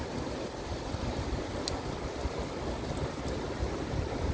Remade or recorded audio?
recorded